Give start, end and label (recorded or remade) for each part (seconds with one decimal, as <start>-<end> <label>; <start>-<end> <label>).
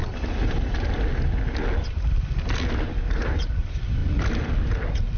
0.0-5.2 recorded